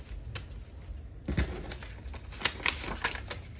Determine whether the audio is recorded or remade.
recorded